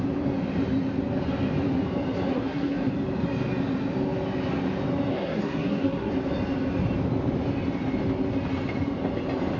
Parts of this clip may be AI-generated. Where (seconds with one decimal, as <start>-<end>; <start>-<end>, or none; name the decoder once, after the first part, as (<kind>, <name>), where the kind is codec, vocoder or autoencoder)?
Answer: 2.3-2.9 (codec, SNAC); 5.1-6.1